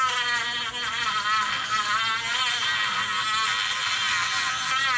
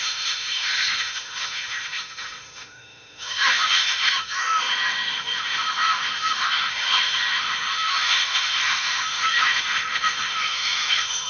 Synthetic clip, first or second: second